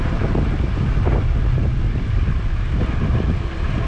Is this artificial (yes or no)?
no